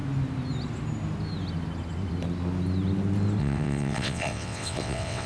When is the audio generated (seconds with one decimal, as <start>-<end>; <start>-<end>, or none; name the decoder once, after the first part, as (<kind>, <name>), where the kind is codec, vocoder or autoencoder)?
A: 3.4-5.3 (vocoder, WaveNeXt)